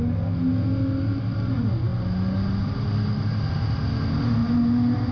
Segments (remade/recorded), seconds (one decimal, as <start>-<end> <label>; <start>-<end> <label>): 0.0-5.1 recorded